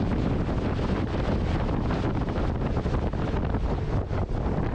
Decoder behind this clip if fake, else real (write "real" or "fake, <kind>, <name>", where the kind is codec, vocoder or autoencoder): real